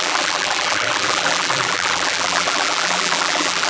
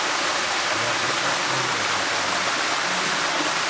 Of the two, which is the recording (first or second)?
second